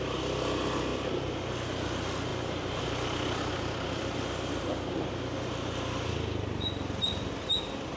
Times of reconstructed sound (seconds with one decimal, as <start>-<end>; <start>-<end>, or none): none